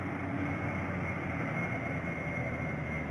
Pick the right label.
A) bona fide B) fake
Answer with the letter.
A